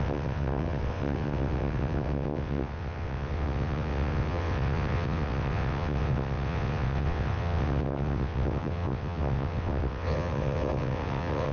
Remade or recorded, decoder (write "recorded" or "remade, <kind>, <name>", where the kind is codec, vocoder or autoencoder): remade, vocoder, WaveNeXt